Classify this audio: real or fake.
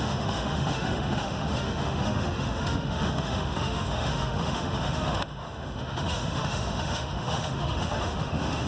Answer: fake